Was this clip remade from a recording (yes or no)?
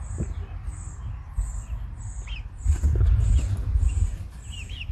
no